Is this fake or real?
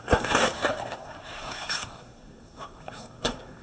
fake